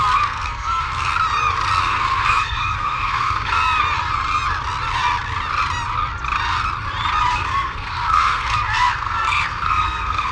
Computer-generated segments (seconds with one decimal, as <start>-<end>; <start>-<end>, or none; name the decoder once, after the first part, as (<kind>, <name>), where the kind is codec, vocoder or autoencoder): 0.0-1.1 (codec, SNAC); 1.8-3.6; 7.3-10.3